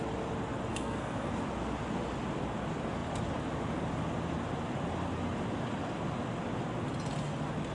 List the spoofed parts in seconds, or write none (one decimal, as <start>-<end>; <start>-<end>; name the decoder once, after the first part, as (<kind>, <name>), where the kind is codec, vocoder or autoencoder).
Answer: 0.7-1.3 (codec, SNAC)